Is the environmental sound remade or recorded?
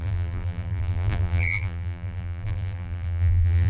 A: remade